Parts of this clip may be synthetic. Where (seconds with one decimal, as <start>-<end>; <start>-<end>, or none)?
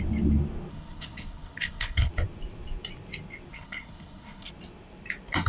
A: 0.7-2.1; 3.5-4.5